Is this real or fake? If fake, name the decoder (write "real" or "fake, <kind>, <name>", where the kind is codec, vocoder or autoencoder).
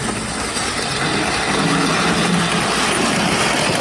real